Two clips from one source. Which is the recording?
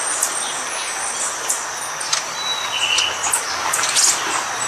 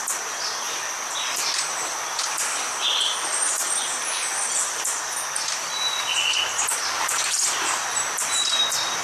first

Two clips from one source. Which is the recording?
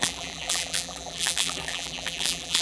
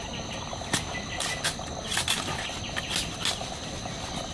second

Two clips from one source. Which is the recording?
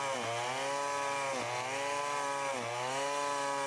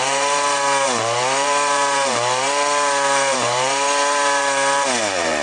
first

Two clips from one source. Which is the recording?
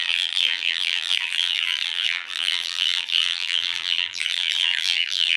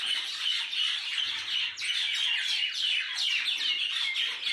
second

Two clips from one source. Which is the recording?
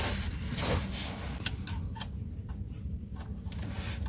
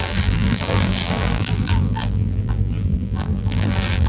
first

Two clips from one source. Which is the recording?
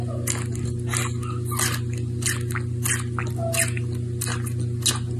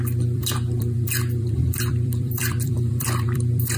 first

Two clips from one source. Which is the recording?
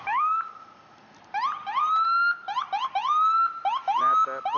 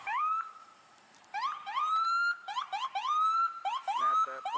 first